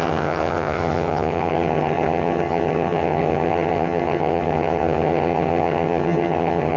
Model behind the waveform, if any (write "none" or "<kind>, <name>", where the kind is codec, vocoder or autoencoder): vocoder, HiFi-GAN